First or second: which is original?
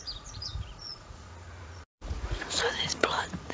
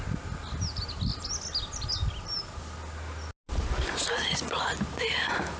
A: second